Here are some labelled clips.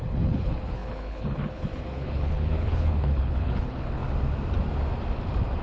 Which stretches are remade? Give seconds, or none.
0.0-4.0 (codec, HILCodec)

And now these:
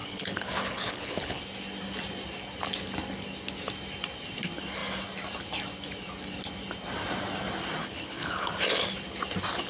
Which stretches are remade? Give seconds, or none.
0.0-1.4 (codec, HILCodec); 7.8-8.5